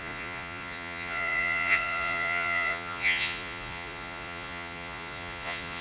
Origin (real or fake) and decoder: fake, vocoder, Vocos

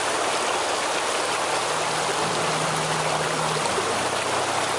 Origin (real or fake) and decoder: real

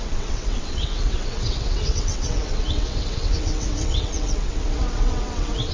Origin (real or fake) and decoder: fake, vocoder, WaveNeXt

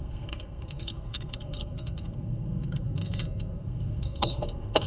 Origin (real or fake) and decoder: fake, codec, SNAC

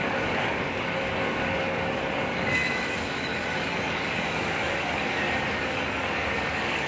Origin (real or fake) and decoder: fake, codec, DAC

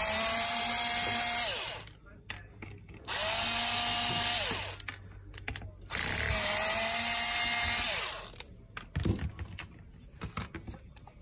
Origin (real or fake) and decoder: real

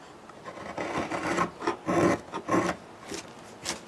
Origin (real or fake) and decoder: real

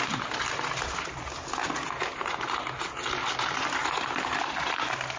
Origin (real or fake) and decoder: real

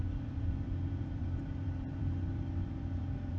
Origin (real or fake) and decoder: fake, vocoder, BigVGAN v2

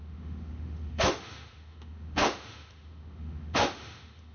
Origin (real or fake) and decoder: fake, autoencoder, DAC-VAE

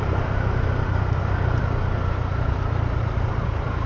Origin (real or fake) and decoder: fake, vocoder, BigVGAN v2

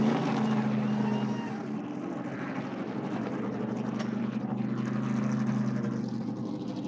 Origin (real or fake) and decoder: real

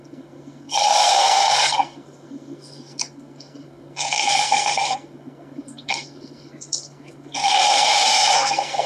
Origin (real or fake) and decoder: fake, codec, SNAC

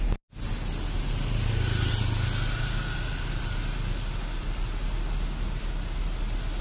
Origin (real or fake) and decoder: real